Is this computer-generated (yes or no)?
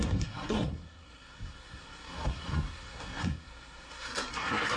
yes